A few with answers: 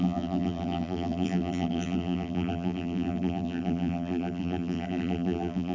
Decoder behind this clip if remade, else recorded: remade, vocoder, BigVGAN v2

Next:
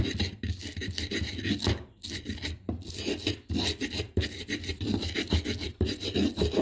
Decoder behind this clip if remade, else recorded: recorded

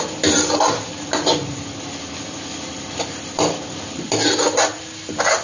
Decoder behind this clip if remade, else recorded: recorded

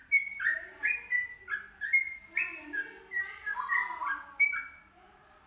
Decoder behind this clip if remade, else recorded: recorded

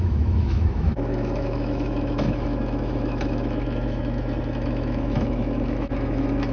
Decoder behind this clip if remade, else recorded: remade, autoencoder, DAC-VAE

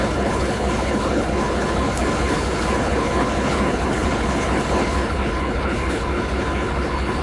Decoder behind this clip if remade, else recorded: remade, codec, HILCodec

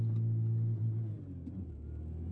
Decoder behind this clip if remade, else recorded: recorded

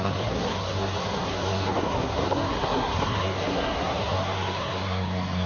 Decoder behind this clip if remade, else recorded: remade, codec, SNAC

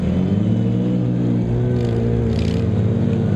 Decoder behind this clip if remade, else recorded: recorded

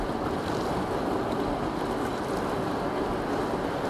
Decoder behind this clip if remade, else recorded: recorded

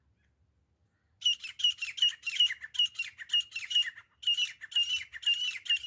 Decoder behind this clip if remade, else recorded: recorded